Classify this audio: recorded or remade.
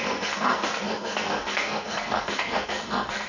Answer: remade